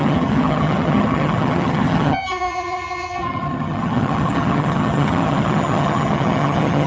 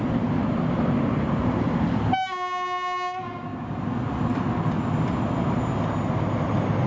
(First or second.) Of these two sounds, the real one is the second